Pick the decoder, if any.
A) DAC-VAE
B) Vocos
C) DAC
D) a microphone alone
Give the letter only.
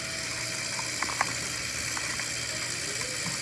D